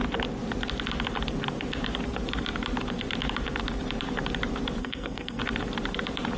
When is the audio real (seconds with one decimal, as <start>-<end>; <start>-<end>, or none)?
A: 0.0-4.8; 5.4-6.4